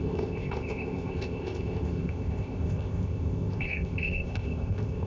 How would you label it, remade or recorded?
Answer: remade